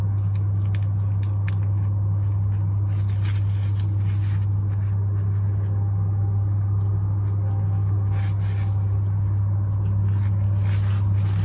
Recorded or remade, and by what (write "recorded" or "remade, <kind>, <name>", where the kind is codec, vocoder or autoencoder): recorded